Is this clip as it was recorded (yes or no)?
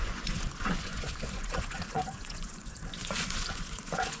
no